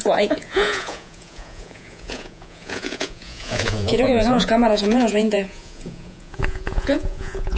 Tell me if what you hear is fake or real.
fake